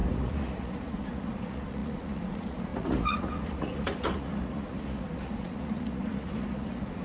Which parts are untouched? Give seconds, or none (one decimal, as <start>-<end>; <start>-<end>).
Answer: none